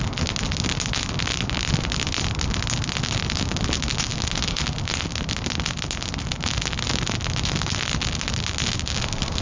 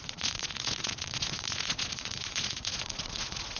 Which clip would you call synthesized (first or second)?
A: second